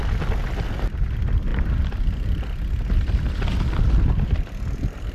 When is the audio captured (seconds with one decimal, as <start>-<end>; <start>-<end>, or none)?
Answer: 0.0-5.1